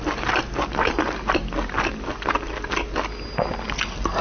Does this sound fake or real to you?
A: real